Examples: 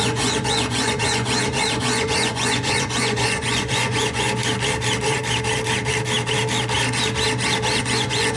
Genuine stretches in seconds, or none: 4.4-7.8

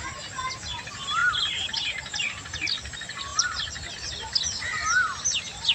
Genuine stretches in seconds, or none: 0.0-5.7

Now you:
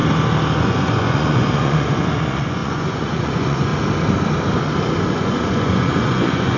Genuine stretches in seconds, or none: 0.0-0.6; 3.7-5.1

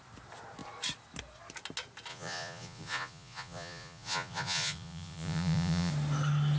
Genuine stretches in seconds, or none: 0.0-2.1; 5.9-6.6

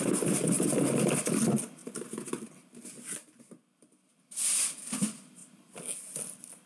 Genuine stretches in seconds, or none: 0.0-6.7